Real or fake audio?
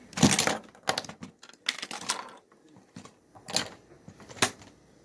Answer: real